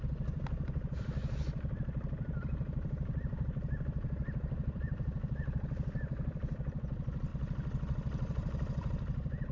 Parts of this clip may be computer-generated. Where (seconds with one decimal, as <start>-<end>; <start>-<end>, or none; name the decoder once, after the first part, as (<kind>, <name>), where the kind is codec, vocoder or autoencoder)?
0.0-7.3 (vocoder, BigVGAN v2)

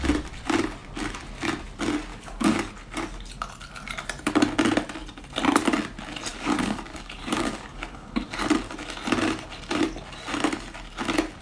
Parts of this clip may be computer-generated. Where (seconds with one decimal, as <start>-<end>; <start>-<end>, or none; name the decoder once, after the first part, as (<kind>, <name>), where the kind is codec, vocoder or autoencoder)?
2.1-2.7 (codec, DAC); 6.3-8.2

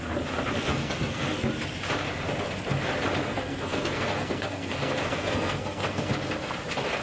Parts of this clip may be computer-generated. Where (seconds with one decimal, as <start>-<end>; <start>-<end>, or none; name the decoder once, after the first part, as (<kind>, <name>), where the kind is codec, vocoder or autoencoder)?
0.7-1.5 (codec, SNAC); 3.3-6.1

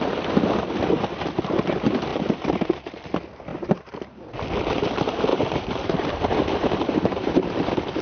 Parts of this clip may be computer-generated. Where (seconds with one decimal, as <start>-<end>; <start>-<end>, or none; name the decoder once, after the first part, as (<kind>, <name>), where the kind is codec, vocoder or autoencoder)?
2.1-3.1 (vocoder, BigVGAN v2); 3.5-4.3; 5.3-7.3

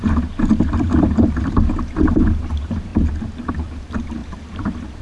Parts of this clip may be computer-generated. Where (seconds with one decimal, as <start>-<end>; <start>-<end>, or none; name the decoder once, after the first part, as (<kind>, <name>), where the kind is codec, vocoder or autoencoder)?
0.0-2.9 (vocoder, BigVGAN v2); 3.5-5.0

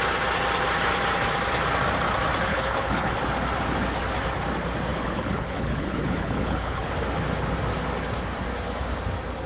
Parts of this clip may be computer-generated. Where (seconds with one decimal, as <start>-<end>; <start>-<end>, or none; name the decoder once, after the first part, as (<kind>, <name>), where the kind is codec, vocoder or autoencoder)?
2.5-3.2 (codec, HILCodec); 4.9-6.9

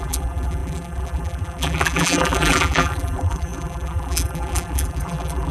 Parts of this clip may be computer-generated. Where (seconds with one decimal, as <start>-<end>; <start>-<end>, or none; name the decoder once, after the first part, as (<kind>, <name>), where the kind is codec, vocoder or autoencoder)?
0.0-5.5 (vocoder, BigVGAN v2)

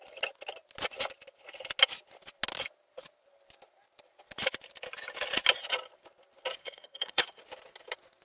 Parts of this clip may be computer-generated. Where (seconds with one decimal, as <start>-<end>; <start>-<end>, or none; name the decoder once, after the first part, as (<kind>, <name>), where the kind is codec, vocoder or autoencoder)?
6.6-7.4 (codec, SNAC)